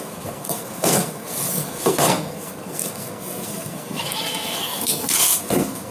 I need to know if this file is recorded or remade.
remade